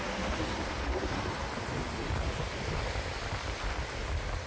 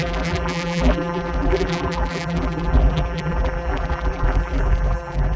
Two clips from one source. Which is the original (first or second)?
first